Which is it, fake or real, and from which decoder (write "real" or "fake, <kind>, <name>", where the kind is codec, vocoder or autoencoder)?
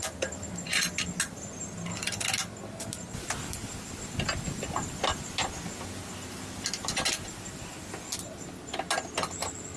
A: real